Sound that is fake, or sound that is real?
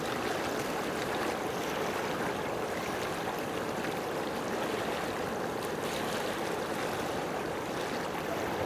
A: real